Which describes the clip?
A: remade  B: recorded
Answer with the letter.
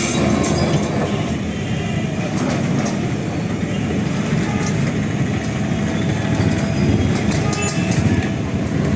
B